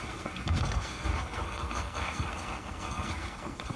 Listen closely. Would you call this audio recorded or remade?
remade